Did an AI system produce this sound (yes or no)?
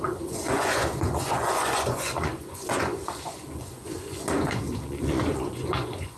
yes